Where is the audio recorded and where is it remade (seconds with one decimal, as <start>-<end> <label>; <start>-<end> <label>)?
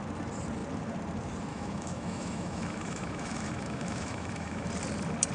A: 0.0-1.5 recorded; 1.5-4.7 remade; 4.7-5.3 recorded